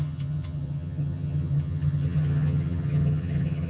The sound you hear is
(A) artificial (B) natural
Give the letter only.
A